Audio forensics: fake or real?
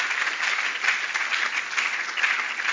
real